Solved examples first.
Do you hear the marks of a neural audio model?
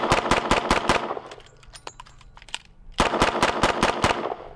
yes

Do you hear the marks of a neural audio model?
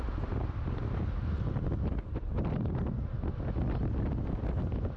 no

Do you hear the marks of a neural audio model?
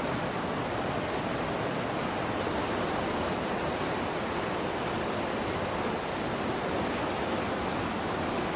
no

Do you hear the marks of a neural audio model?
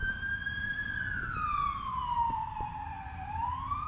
yes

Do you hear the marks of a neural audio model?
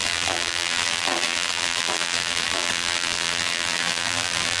yes